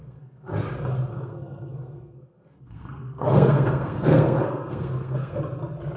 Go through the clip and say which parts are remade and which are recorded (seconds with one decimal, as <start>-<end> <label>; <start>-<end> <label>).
0.0-0.5 remade; 0.5-1.1 recorded; 1.1-5.4 remade; 5.4-6.0 recorded